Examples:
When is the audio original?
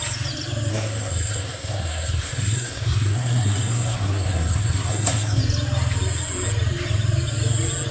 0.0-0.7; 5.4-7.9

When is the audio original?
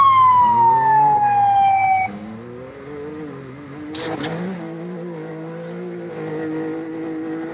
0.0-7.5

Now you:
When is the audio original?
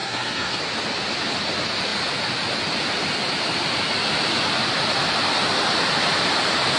0.6-6.8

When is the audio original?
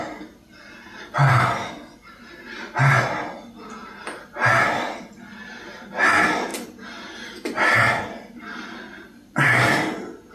0.0-10.3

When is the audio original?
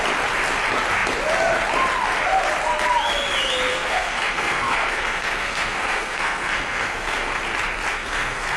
0.0-3.7; 7.4-7.9